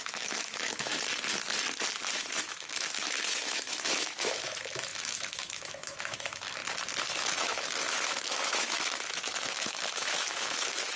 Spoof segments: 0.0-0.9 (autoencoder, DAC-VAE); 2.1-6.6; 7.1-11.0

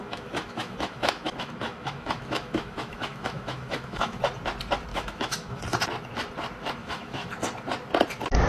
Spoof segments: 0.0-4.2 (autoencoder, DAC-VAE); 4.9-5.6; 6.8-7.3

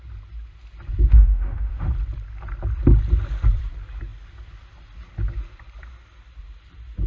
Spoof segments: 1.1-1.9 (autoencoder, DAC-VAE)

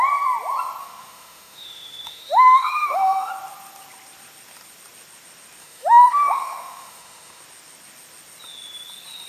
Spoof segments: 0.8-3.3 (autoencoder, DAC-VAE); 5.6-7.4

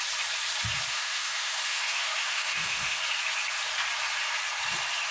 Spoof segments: 0.9-3.0 (autoencoder, DAC-VAE)